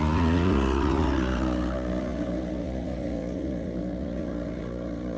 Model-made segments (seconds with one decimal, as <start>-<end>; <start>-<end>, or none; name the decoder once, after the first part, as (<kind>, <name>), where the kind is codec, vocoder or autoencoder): 0.0-5.2 (vocoder, Vocos)